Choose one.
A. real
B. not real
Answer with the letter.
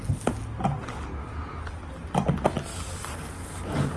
A